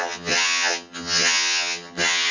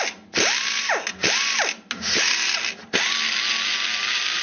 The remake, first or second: first